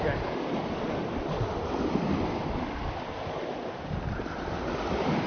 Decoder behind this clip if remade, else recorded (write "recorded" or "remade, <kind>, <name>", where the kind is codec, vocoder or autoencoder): remade, vocoder, BigVGAN v2